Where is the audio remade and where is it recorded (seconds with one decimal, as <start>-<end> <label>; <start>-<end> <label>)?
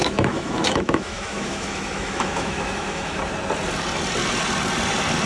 0.0-3.2 remade; 3.2-5.3 recorded